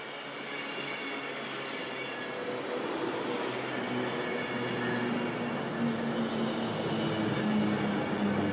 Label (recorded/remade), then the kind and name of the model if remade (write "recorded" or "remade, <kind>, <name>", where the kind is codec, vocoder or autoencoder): recorded